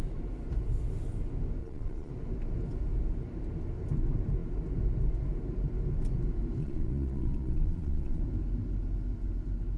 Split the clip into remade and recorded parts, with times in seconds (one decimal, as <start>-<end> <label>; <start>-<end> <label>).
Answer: 0.0-1.6 recorded; 1.6-2.1 remade; 2.1-6.6 recorded; 6.6-8.2 remade; 8.2-9.8 recorded